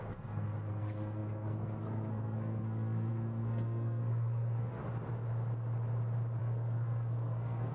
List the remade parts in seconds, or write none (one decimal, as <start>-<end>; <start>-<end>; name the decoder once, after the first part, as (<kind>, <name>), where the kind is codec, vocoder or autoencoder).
0.0-4.8 (codec, SNAC); 6.4-7.7